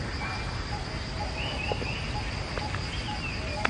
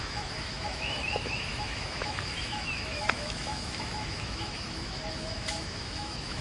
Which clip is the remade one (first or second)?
second